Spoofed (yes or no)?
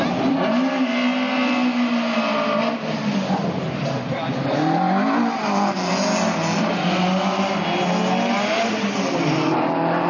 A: no